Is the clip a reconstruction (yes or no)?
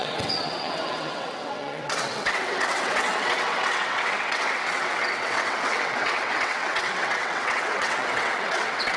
yes